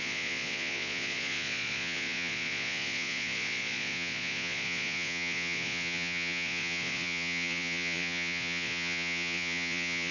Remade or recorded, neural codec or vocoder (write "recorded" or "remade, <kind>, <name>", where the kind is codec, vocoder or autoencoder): remade, vocoder, Vocos